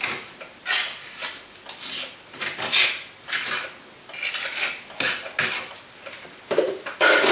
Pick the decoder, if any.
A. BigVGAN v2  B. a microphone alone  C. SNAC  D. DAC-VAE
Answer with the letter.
B